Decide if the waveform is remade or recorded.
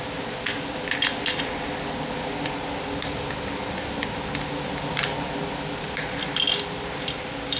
recorded